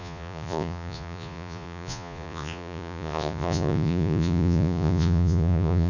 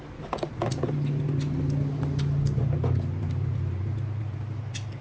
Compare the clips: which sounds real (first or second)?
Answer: second